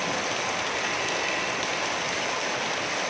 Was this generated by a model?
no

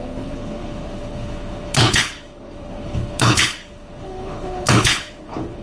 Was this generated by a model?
yes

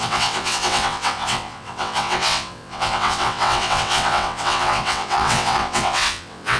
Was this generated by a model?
yes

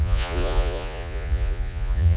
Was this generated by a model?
yes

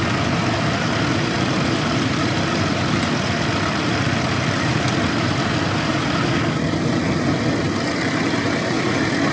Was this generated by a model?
no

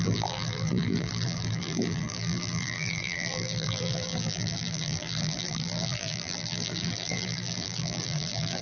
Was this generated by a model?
yes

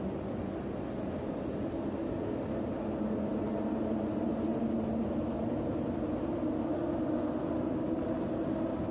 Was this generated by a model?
no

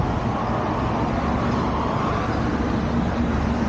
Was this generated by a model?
no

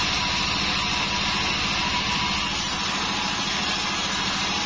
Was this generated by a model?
no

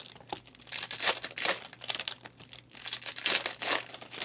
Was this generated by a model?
no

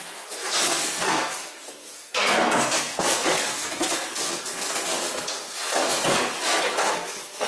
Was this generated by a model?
yes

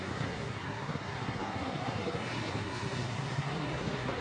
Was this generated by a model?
yes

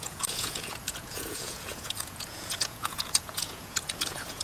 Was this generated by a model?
yes